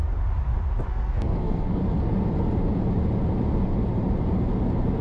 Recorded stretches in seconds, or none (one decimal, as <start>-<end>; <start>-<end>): 0.0-0.9; 1.8-5.0